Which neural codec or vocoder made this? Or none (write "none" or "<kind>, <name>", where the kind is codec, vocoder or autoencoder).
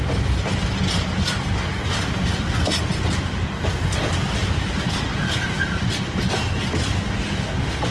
none